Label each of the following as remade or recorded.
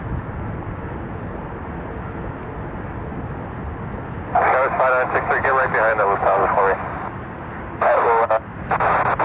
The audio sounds recorded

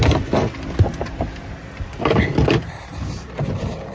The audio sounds recorded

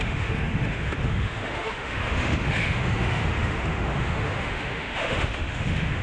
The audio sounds remade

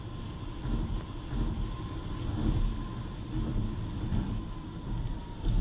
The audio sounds recorded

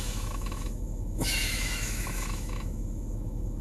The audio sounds remade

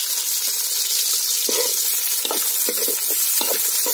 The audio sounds recorded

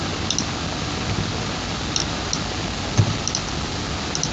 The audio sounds recorded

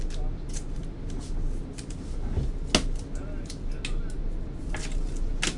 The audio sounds recorded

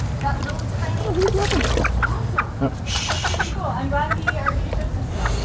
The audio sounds recorded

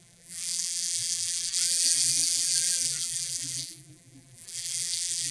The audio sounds remade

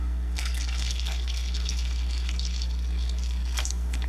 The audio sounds remade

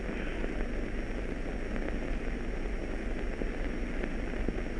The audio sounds recorded